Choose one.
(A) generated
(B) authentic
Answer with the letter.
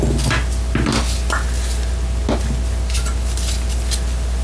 B